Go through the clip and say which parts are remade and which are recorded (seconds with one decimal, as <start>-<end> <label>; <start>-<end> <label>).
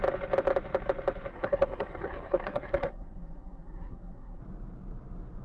0.0-1.3 recorded; 1.3-4.4 remade; 4.4-5.4 recorded